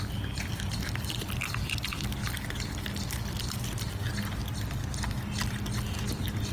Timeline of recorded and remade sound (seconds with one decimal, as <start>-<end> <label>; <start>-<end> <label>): 0.0-2.2 remade; 2.2-6.0 recorded; 6.0-6.5 remade